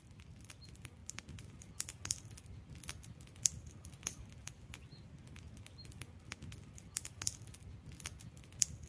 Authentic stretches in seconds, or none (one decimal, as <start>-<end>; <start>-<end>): 0.0-1.0; 1.6-8.9